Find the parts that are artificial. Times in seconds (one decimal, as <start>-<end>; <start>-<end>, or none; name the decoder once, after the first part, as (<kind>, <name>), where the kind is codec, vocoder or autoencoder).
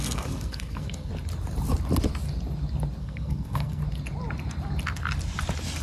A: 0.0-1.1 (codec, SNAC); 3.0-3.8